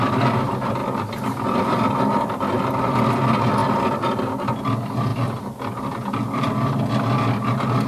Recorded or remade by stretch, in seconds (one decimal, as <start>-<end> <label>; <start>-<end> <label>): 0.0-0.8 recorded; 0.8-2.6 remade; 2.6-5.1 recorded; 5.1-6.8 remade; 6.8-7.9 recorded